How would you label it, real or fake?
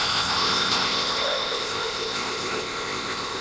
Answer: fake